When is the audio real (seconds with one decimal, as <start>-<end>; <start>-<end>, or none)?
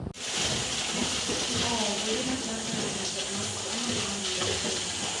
0.0-1.0; 1.7-3.2; 4.2-5.2